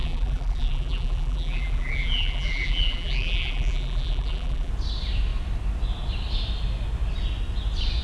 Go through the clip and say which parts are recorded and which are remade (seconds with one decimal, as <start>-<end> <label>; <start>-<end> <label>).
0.0-4.7 remade; 4.7-8.0 recorded

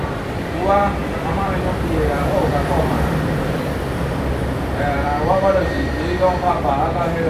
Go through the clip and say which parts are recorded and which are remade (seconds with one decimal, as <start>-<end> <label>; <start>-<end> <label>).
0.0-1.0 recorded; 1.0-5.3 remade; 5.3-7.3 recorded

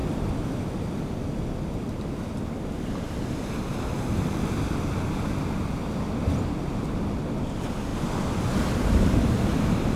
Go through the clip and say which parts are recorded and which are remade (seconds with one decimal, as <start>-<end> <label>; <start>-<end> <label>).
0.0-0.7 remade; 0.7-7.9 recorded; 7.9-8.7 remade; 8.7-10.0 recorded

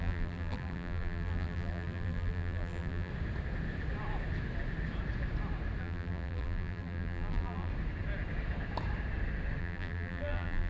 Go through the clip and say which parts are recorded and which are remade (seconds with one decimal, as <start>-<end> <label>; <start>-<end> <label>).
0.0-3.1 remade; 3.1-5.8 recorded; 5.8-7.7 remade; 7.7-9.6 recorded; 9.6-10.7 remade

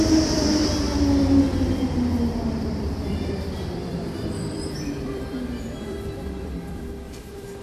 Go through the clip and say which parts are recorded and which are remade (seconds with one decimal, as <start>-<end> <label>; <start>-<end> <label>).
0.0-0.6 remade; 0.6-2.3 recorded; 2.3-7.6 remade

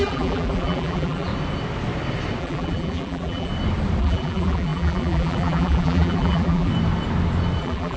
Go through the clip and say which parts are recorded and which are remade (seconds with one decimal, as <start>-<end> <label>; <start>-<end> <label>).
0.0-1.3 remade; 1.3-2.4 recorded; 2.4-3.5 remade; 3.5-4.0 recorded; 4.0-6.7 remade; 6.7-7.6 recorded; 7.6-8.0 remade

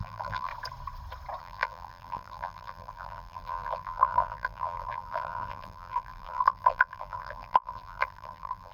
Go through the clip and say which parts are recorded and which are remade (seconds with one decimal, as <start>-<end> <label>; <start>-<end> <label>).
0.0-0.5 remade; 0.5-1.4 recorded; 1.4-8.7 remade

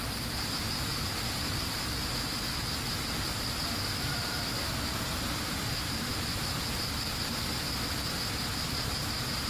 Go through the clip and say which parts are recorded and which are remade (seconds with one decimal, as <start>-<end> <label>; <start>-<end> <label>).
0.0-6.1 recorded; 6.1-7.3 remade; 7.3-9.5 recorded